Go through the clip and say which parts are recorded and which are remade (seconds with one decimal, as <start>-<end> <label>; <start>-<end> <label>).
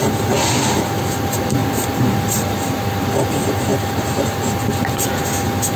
0.0-1.6 recorded; 1.6-2.8 remade; 2.8-5.8 recorded